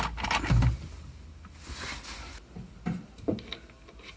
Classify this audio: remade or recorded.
recorded